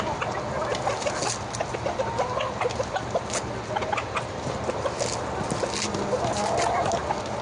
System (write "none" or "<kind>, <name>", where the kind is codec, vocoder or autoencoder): none